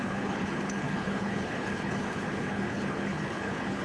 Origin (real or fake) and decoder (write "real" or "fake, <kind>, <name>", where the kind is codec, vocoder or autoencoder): fake, codec, HILCodec